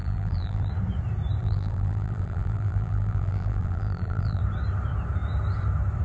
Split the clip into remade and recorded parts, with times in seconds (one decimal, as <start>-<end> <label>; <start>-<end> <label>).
0.0-0.7 remade; 0.7-1.4 recorded; 1.4-4.4 remade; 4.4-6.0 recorded